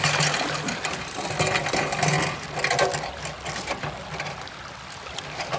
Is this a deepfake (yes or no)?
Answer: no